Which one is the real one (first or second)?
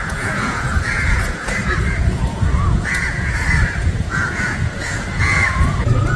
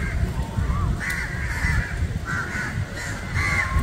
second